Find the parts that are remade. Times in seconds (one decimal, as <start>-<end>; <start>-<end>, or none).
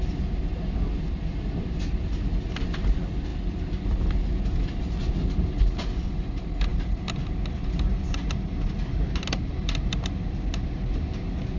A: none